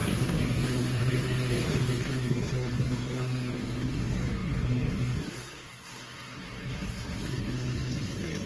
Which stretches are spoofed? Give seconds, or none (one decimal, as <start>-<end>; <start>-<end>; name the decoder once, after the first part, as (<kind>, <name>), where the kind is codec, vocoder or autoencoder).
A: 0.0-8.5 (codec, SNAC)

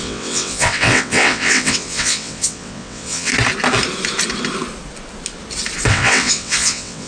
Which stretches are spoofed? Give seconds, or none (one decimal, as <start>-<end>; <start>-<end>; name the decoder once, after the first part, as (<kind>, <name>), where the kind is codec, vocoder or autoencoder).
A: 0.0-3.3 (vocoder, WaveNeXt); 5.9-7.1

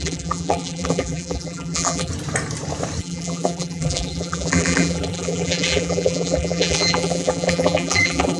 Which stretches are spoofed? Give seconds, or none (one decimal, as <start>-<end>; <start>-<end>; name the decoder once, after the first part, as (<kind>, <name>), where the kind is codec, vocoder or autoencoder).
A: 0.0-2.1 (vocoder, BigVGAN v2); 3.0-8.4

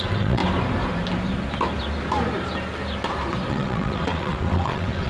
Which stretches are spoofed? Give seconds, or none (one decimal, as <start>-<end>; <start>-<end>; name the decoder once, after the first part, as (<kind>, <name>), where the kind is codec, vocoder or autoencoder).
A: 0.0-0.4 (vocoder, WaveNeXt); 3.5-5.1

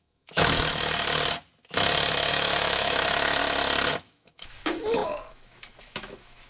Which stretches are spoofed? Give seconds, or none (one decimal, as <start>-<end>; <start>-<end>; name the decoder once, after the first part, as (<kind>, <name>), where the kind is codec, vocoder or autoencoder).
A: 0.0-0.7 (autoencoder, DAC-VAE); 2.3-3.4; 4.0-6.5

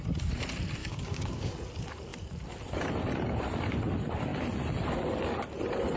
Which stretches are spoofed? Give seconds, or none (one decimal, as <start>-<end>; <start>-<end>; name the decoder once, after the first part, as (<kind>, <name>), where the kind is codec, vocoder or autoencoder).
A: 0.8-1.5 (codec, DAC)

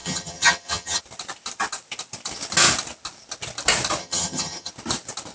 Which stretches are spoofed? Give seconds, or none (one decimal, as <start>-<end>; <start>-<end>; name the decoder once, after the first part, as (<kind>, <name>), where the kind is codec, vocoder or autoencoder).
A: 0.0-1.0 (vocoder, HiFi-GAN); 4.0-4.7

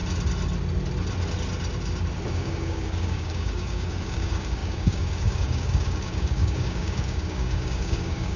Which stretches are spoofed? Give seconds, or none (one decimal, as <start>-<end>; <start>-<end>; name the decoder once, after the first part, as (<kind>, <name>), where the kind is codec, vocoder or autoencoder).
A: 2.3-8.4 (codec, DAC)